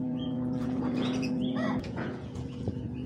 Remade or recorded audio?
remade